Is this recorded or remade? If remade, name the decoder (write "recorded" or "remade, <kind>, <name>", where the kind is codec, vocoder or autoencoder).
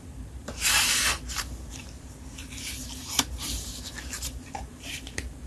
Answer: remade, vocoder, BigVGAN v2